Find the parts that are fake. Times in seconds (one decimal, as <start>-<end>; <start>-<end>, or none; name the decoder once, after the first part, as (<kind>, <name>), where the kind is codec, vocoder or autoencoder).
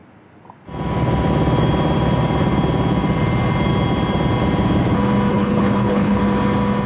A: 5.3-6.2 (codec, HILCodec)